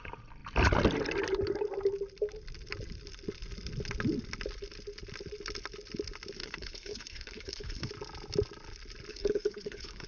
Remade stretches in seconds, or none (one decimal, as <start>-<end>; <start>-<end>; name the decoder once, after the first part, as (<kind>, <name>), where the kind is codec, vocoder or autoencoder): 6.4-7.9 (codec, HILCodec); 9.1-10.1